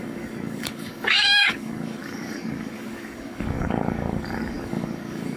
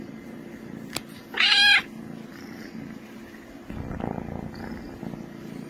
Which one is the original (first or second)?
second